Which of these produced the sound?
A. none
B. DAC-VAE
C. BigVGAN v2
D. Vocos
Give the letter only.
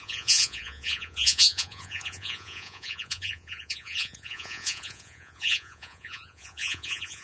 D